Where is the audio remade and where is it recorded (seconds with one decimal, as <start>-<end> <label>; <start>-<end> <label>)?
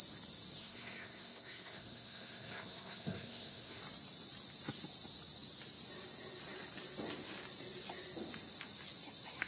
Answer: 0.0-0.6 recorded; 0.6-3.8 remade; 3.8-9.5 recorded